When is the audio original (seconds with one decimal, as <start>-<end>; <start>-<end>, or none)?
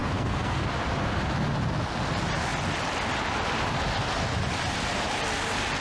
0.7-5.8